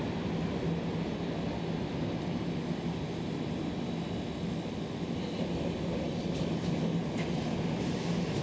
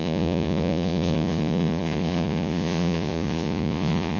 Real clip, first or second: first